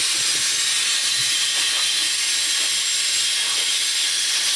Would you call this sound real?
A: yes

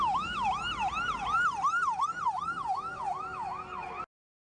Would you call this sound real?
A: yes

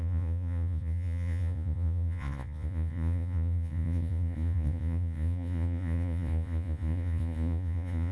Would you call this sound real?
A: no